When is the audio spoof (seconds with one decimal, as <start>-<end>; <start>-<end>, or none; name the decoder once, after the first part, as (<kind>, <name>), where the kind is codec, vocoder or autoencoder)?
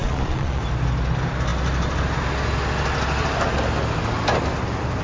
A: 0.0-0.6 (vocoder, Vocos)